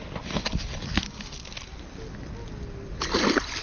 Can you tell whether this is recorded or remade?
recorded